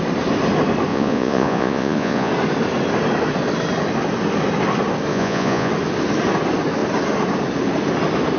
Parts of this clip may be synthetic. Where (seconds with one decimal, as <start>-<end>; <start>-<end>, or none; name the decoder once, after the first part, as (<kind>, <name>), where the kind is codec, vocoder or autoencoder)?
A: 0.9-2.3 (vocoder, Vocos); 5.1-5.7